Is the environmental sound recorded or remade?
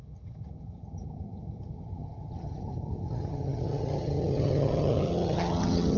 remade